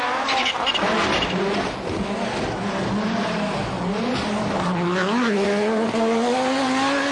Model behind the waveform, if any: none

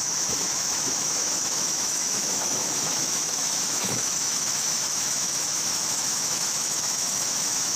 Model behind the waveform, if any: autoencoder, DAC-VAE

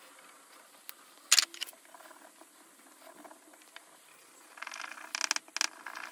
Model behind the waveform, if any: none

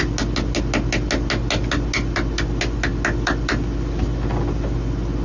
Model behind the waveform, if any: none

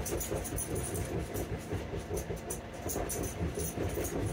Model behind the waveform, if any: none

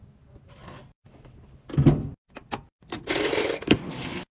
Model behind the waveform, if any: none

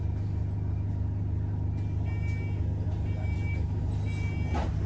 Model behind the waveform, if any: none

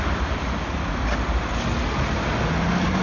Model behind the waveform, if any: none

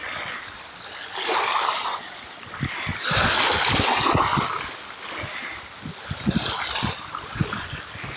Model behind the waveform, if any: none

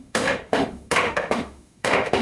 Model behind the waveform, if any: autoencoder, DAC-VAE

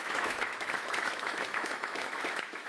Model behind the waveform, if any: autoencoder, DAC-VAE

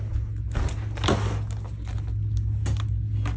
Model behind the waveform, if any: none